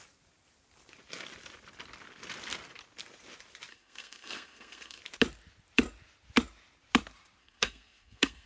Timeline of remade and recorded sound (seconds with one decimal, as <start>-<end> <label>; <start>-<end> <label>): 0.0-3.7 recorded; 3.7-5.0 remade; 5.0-7.4 recorded; 7.4-8.5 remade